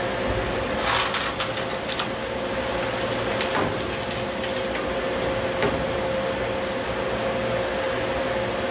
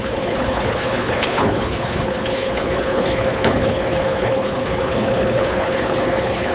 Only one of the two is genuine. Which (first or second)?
first